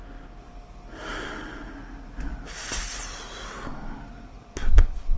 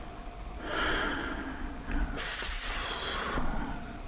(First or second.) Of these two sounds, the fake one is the second